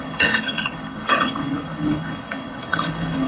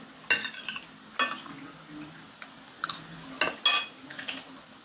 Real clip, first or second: second